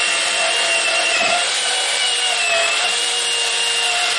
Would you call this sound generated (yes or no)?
no